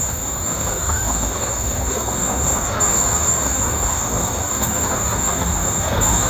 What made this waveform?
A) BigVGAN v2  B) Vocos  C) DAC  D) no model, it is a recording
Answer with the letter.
C